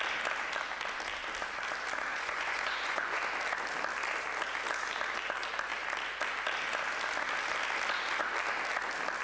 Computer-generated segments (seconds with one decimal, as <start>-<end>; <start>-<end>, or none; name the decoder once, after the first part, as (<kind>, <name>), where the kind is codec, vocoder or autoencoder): 2.1-3.2 (vocoder, Vocos)